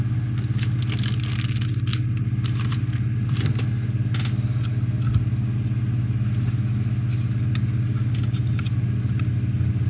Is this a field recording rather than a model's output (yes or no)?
yes